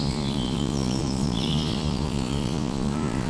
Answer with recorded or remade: remade